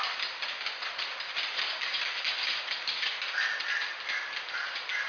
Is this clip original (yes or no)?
yes